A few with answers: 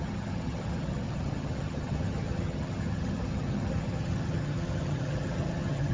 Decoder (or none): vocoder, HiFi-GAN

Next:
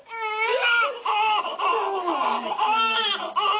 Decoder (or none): none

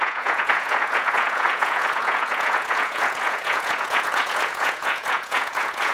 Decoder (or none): vocoder, Vocos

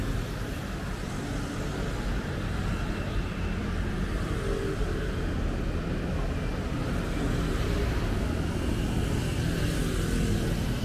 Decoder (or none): none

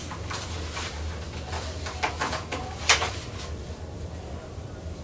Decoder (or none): none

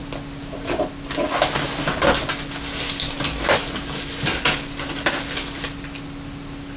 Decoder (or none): none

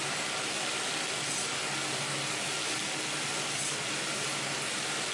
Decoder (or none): none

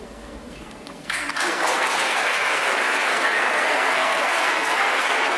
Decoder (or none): codec, SNAC